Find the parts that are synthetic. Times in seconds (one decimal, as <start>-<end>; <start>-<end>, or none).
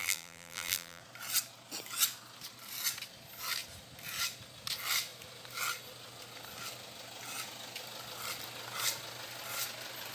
0.0-1.0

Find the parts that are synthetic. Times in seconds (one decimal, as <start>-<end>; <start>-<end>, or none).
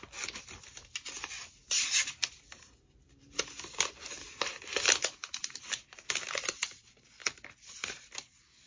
0.0-7.2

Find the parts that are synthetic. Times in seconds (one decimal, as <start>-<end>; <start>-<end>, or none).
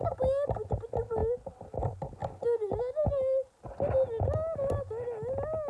none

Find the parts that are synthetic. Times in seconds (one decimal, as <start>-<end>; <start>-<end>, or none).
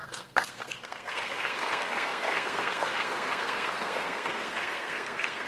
0.0-5.5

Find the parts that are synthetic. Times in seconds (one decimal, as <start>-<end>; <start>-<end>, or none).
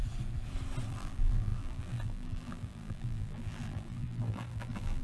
0.9-5.0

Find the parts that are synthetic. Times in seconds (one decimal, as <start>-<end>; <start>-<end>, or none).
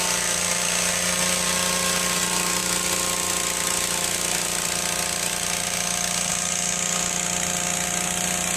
none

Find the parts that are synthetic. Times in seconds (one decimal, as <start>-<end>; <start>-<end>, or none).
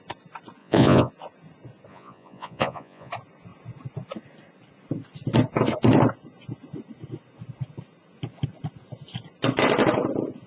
0.6-1.1; 1.9-3.1